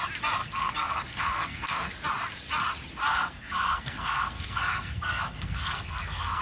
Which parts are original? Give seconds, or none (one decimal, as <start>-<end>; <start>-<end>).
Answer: 0.0-0.4; 1.9-3.1